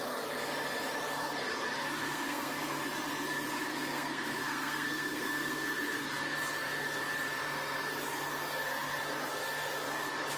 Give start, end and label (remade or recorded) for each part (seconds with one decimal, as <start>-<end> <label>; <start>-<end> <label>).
0.0-2.0 recorded; 2.0-2.8 remade; 2.8-3.7 recorded; 3.7-5.7 remade; 5.7-10.4 recorded